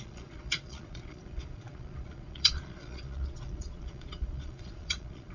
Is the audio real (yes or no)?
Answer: no